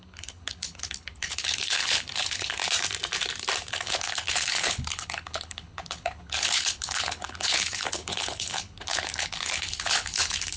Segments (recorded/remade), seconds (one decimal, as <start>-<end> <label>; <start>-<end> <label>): 0.0-2.6 remade; 2.6-3.7 recorded; 3.7-10.6 remade